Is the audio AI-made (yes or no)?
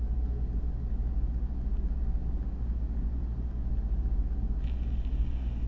no